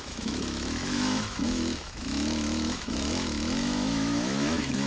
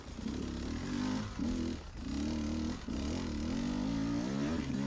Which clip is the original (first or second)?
second